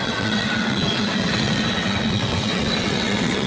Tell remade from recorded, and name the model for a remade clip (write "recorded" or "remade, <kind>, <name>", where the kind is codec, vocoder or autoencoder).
remade, vocoder, WaveNeXt